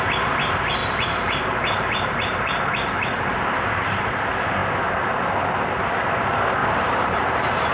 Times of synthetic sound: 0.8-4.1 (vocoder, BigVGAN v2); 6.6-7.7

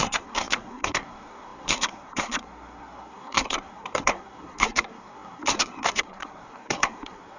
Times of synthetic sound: 0.0-7.4 (codec, SNAC)

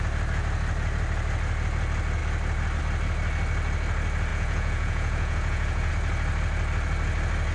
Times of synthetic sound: 4.3-5.9 (vocoder, Vocos)

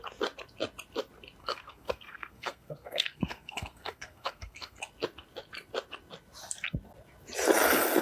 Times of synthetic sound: 1.4-4.8 (codec, SNAC)

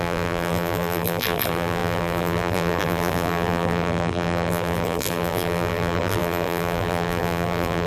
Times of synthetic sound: 0.0-7.9 (vocoder, BigVGAN v2)